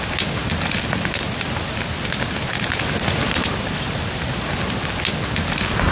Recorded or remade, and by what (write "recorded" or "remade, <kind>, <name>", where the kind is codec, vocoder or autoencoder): recorded